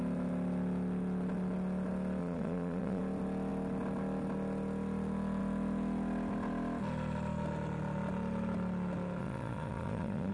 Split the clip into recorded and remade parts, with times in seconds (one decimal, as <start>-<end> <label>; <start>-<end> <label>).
0.0-2.2 recorded; 2.2-3.0 remade; 3.0-9.2 recorded; 9.2-10.3 remade